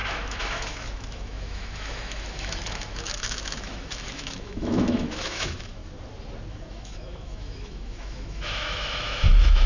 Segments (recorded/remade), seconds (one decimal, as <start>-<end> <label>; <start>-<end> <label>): 0.0-5.8 remade; 5.8-6.5 recorded; 6.5-9.7 remade